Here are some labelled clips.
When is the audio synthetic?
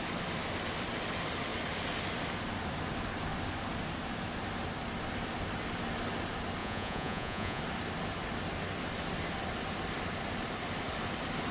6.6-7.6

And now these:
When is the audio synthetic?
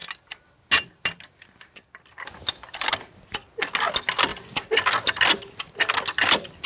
none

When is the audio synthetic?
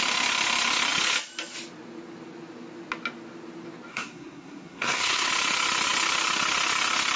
3.9-5.3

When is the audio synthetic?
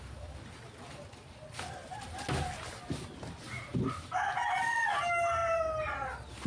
none